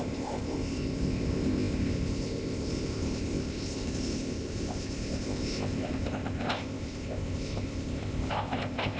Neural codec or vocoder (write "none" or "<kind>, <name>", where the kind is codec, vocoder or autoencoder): codec, ZipCodec